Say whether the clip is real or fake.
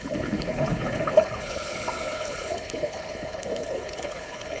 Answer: fake